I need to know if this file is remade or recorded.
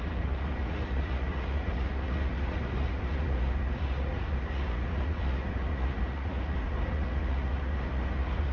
remade